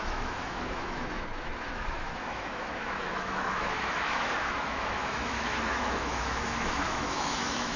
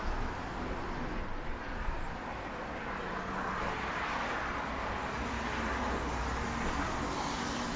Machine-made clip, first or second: first